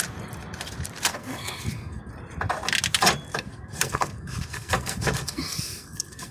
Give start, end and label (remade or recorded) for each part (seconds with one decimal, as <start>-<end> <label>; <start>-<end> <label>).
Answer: 0.0-1.1 recorded; 1.1-2.1 remade; 2.1-3.3 recorded; 3.3-6.3 remade